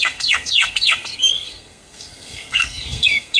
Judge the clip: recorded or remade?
remade